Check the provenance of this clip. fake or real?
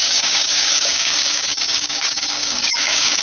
fake